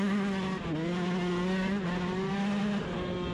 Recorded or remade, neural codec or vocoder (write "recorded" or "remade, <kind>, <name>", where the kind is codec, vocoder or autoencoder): recorded